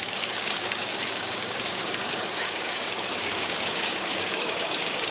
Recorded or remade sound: remade